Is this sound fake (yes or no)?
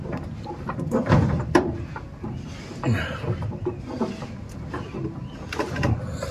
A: no